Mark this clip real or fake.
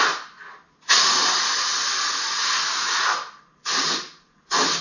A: real